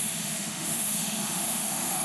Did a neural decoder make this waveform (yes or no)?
yes